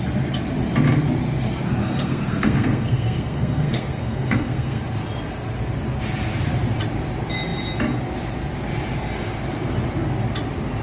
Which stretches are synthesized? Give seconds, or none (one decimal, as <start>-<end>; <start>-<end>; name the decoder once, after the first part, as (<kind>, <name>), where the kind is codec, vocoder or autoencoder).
1.8-4.8 (codec, SNAC)